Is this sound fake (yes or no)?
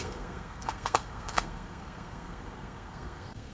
yes